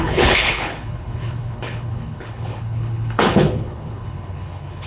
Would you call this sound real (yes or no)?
no